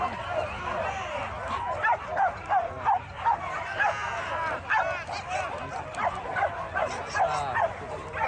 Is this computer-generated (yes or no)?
no